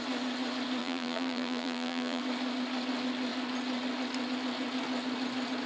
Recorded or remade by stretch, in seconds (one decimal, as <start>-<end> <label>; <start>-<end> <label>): 0.0-0.8 recorded; 0.8-2.2 remade; 2.2-5.7 recorded